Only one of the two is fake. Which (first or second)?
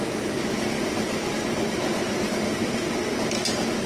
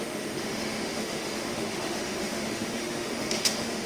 second